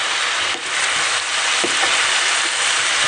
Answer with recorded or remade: recorded